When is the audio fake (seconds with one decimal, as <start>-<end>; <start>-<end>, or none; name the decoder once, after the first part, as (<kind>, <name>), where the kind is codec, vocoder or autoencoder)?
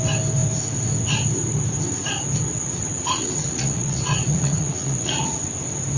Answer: 2.5-5.4 (vocoder, Vocos)